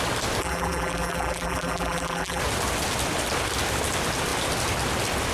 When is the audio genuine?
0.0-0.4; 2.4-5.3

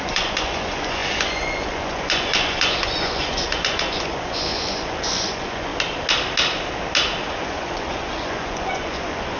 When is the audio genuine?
5.7-7.3